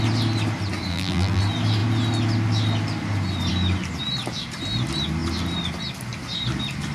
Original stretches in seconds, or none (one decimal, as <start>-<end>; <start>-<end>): 0.0-0.9; 1.4-6.9